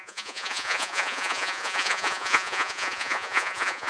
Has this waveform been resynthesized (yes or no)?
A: yes